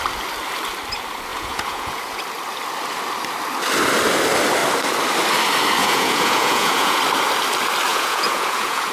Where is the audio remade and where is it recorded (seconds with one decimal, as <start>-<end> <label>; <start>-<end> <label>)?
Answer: 0.0-1.3 recorded; 1.3-2.2 remade; 2.2-5.8 recorded; 5.8-7.0 remade; 7.0-7.9 recorded; 7.9-8.9 remade